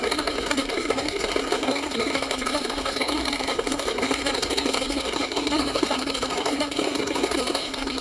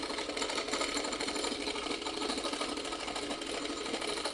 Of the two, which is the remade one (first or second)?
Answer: first